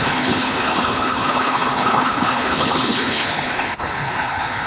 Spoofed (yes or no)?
yes